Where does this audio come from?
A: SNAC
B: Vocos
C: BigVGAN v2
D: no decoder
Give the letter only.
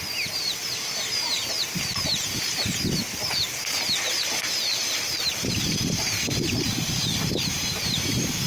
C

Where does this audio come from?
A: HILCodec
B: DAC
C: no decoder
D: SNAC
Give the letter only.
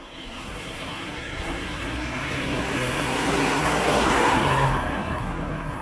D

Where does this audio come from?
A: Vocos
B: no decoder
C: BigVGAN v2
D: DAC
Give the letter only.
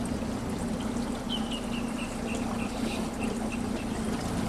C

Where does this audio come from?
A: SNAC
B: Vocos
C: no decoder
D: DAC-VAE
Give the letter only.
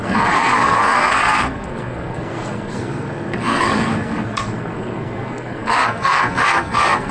A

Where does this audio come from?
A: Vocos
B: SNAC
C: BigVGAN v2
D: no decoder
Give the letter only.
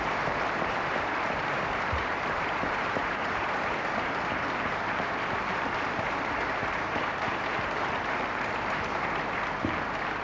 C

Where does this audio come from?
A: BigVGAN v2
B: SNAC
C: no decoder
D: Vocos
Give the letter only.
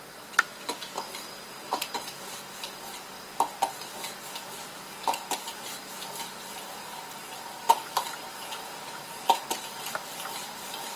C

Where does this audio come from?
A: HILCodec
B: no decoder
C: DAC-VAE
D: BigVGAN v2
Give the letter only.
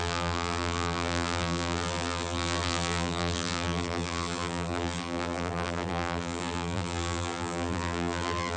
D